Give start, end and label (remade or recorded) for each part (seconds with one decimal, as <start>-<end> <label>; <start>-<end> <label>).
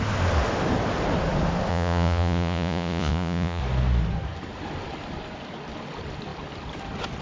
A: 0.0-1.7 recorded; 1.7-3.6 remade; 3.6-7.2 recorded